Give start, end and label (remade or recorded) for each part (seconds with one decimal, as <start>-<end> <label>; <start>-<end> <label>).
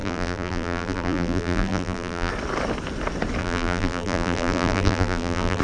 0.0-2.3 remade; 2.3-3.4 recorded; 3.4-5.6 remade